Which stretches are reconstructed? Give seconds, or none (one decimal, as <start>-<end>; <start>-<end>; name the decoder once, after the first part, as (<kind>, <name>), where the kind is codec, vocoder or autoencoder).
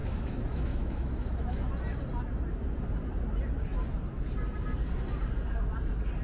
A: 0.0-1.6 (autoencoder, DAC-VAE)